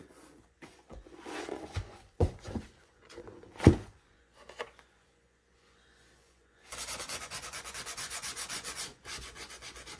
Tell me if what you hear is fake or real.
fake